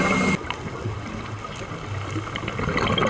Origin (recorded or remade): recorded